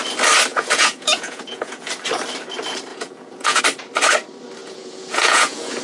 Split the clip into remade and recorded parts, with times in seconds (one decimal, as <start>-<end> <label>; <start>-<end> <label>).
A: 0.0-0.5 recorded; 0.5-1.9 remade; 1.9-2.9 recorded; 2.9-3.6 remade; 3.6-4.6 recorded; 4.6-5.8 remade

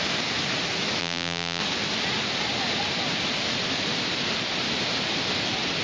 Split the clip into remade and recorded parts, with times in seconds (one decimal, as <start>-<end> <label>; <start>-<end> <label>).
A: 0.0-1.0 recorded; 1.0-1.6 remade; 1.6-5.8 recorded

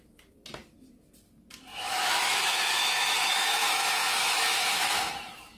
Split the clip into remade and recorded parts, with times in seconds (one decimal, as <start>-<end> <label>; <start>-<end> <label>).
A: 0.0-1.7 recorded; 1.7-5.1 remade; 5.1-5.6 recorded